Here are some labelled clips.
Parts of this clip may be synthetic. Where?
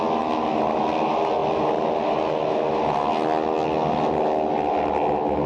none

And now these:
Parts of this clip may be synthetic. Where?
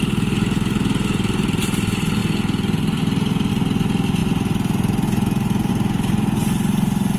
none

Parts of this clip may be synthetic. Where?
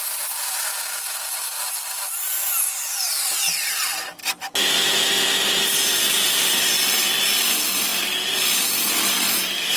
none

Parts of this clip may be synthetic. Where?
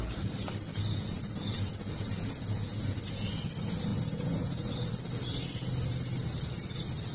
0.7-3.3; 3.9-4.9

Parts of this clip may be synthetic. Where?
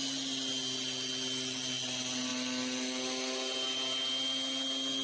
none